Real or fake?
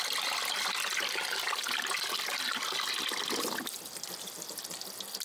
real